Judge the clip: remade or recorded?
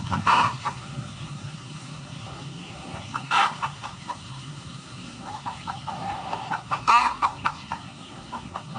remade